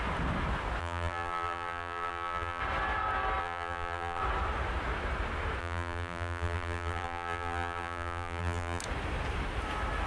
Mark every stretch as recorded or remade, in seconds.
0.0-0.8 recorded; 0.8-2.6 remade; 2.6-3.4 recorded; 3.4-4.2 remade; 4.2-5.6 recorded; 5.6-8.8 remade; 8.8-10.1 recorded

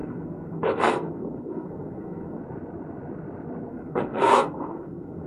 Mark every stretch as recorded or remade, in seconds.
0.0-2.4 remade; 2.4-3.7 recorded; 3.7-5.3 remade

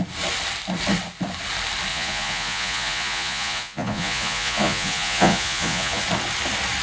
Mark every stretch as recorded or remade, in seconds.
0.0-1.9 recorded; 1.9-6.0 remade; 6.0-6.8 recorded

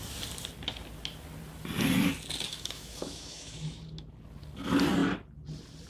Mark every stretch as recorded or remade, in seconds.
0.0-2.5 recorded; 2.5-3.8 remade; 3.8-5.9 recorded

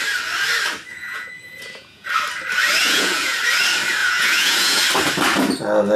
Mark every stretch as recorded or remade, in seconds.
0.0-0.9 recorded; 0.9-2.1 remade; 2.1-2.8 recorded; 2.8-3.4 remade; 3.4-4.0 recorded; 4.0-4.8 remade; 4.8-6.0 recorded